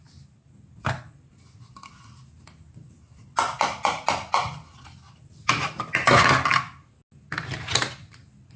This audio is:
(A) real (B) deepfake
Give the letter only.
A